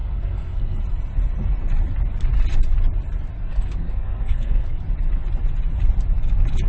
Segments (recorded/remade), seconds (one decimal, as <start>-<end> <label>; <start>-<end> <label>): 0.0-0.8 remade; 0.8-3.5 recorded; 3.5-4.8 remade; 4.8-6.7 recorded